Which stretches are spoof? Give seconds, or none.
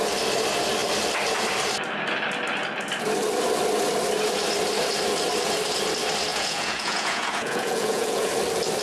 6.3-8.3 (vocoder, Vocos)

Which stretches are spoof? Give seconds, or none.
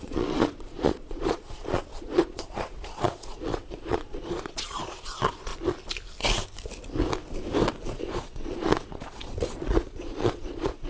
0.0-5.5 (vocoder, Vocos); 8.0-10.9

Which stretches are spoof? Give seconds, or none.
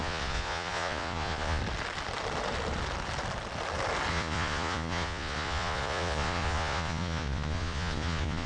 0.0-1.6 (vocoder, Vocos); 4.1-8.5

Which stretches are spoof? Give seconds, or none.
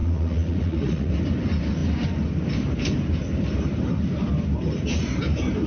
0.0-1.1 (vocoder, Vocos)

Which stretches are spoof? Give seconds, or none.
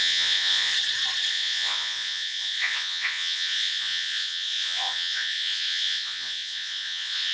0.0-0.7 (vocoder, Vocos); 1.3-7.3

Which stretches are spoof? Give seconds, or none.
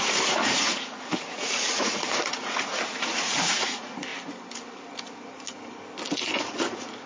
0.0-4.1 (vocoder, Vocos); 6.4-7.1